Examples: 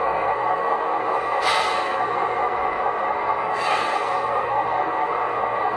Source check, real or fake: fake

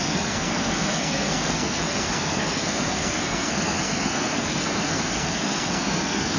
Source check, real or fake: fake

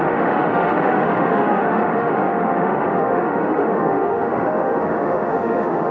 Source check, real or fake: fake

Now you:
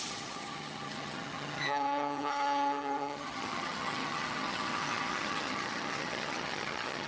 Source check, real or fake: fake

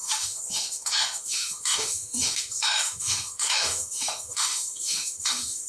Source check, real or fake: fake